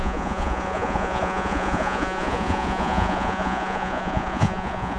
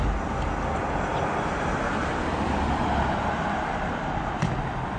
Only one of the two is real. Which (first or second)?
second